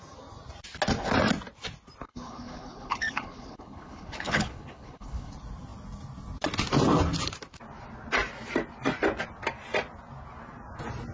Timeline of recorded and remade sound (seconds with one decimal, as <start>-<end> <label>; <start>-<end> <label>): 0.0-2.1 recorded; 2.1-5.3 remade; 5.3-11.1 recorded